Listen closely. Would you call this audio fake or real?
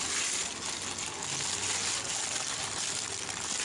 real